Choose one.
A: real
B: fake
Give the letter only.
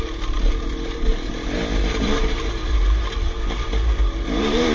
B